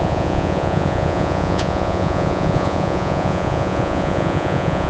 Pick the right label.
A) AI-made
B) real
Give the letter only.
A